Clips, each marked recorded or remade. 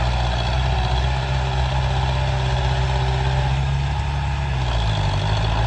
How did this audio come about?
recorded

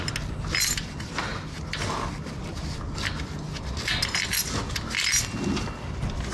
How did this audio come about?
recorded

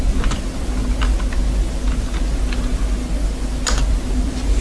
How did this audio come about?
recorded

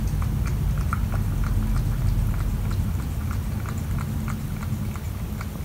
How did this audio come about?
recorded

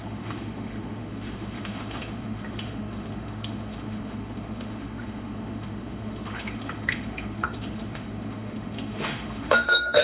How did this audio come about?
remade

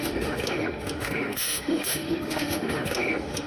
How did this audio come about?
remade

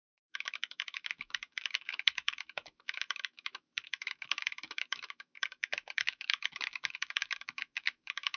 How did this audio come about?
remade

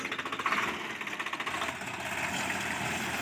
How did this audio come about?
recorded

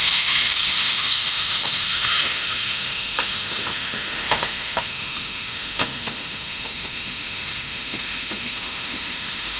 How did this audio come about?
remade